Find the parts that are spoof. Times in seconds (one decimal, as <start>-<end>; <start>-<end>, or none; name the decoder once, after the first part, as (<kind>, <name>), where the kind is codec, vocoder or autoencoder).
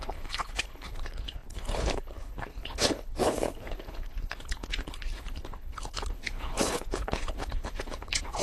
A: 0.0-8.4 (codec, HILCodec)